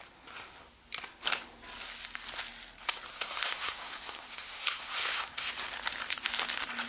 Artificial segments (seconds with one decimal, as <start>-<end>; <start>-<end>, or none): 3.1-5.5